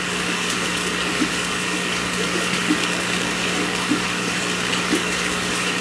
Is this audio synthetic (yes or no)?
yes